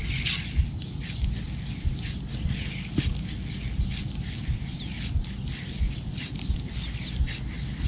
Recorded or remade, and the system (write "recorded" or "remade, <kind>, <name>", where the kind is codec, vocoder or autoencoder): recorded